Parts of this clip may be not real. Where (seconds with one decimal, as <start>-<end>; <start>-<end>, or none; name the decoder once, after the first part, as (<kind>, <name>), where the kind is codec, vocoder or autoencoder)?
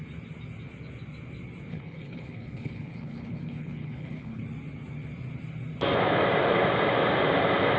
1.7-4.4 (codec, HILCodec)